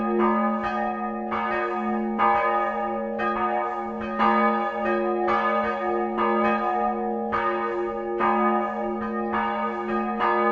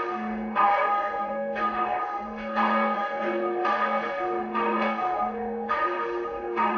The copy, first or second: second